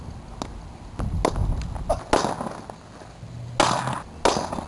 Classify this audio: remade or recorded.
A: recorded